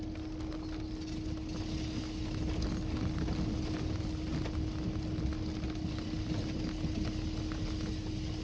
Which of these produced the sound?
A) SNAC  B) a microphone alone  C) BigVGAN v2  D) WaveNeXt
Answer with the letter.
B